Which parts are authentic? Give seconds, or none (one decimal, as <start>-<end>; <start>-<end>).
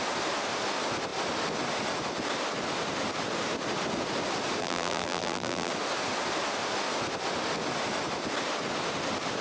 0.0-4.6; 5.7-9.4